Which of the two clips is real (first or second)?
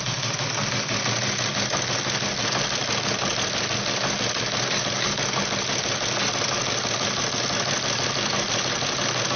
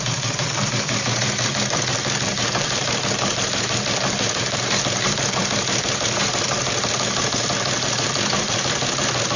first